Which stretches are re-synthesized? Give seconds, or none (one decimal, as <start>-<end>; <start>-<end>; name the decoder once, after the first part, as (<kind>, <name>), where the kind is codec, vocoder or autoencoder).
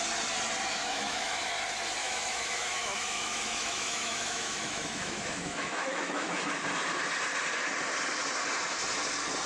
0.8-1.5 (autoencoder, DAC-VAE); 2.0-6.5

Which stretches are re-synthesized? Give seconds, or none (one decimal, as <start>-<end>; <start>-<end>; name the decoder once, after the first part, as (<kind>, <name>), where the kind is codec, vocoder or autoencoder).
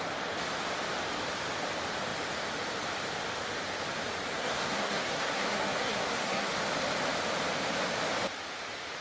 4.3-6.5 (codec, SNAC)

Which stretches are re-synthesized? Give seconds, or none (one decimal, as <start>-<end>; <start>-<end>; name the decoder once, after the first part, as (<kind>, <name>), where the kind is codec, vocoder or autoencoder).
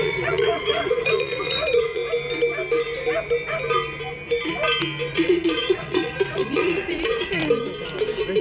0.0-2.0 (vocoder, Vocos); 5.1-7.4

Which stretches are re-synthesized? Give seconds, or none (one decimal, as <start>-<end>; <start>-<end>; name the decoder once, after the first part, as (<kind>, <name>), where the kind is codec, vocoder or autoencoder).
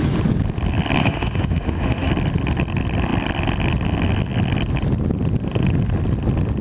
1.0-2.1 (autoencoder, DAC-VAE)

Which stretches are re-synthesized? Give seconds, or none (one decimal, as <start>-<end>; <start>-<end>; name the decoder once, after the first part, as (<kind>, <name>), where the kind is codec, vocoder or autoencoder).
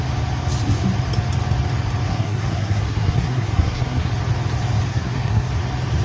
2.1-4.1 (codec, SNAC); 4.9-5.5